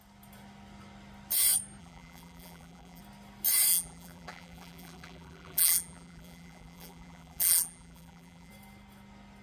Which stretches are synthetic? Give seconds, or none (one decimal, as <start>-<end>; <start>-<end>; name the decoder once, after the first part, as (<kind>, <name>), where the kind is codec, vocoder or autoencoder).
1.8-3.0 (vocoder, BigVGAN v2); 3.7-8.5